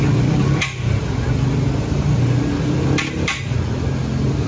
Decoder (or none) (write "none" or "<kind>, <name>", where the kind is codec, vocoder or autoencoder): none